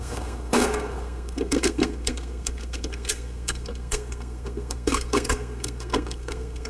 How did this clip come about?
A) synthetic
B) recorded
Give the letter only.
A